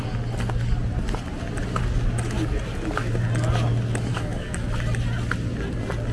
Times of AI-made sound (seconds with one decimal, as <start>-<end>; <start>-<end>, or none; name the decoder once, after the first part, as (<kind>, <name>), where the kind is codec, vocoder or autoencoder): 4.1-4.7 (codec, DAC)